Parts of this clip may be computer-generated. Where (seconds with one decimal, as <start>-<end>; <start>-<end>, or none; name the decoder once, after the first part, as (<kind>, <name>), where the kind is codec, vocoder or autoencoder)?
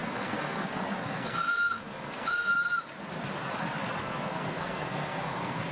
0.0-2.5 (codec, SNAC); 4.0-5.7